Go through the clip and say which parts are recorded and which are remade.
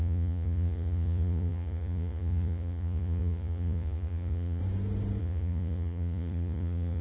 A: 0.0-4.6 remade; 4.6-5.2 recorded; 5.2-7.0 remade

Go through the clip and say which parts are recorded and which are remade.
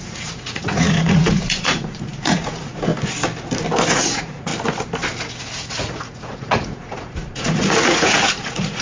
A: 0.0-2.9 remade; 2.9-3.9 recorded; 3.9-4.5 remade; 4.5-5.4 recorded; 5.4-8.8 remade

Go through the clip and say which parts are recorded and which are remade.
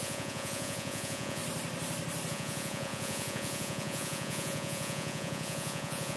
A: 0.0-1.4 remade; 1.4-2.3 recorded; 2.3-6.2 remade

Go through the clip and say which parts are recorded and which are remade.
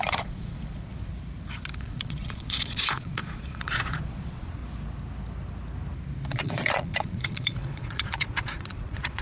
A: 0.0-1.1 remade; 1.1-1.8 recorded; 1.8-4.6 remade; 4.6-6.3 recorded; 6.3-9.2 remade